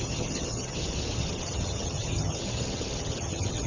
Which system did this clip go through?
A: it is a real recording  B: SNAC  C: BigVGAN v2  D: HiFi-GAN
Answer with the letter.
D